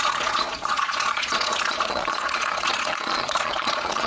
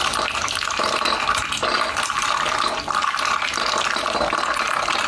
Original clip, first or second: second